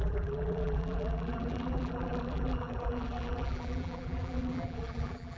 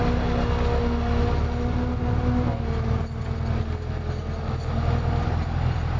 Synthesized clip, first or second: first